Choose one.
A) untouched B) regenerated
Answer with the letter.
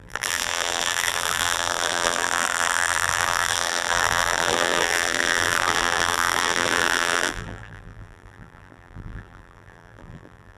B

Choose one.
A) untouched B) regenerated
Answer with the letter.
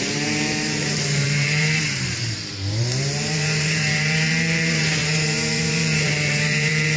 B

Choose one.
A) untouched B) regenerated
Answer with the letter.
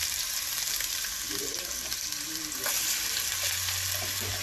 A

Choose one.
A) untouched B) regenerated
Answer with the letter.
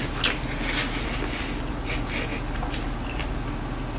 A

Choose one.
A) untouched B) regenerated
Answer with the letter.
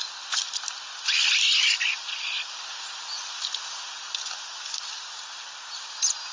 A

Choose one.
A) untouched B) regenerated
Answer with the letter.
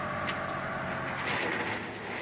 A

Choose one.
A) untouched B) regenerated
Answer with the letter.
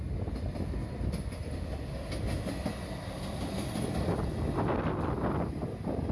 A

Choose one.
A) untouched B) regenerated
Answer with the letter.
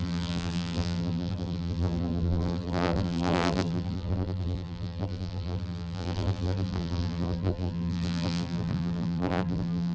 B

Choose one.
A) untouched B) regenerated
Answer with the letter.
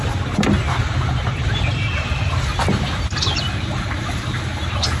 B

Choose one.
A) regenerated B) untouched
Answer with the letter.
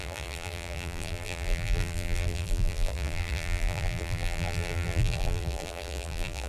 A